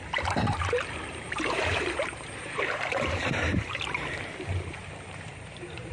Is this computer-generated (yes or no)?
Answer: yes